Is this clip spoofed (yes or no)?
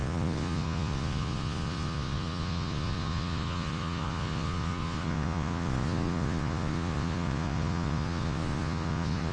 yes